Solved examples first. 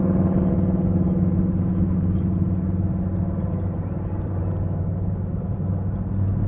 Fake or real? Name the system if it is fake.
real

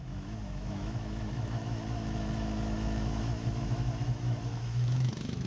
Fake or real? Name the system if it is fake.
fake, autoencoder, DAC-VAE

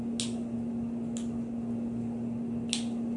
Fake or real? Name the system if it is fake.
real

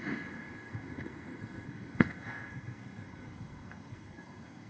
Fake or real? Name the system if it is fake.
fake, codec, SNAC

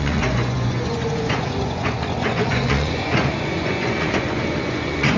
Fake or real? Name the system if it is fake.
fake, vocoder, Vocos